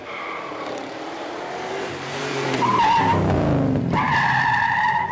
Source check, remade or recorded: remade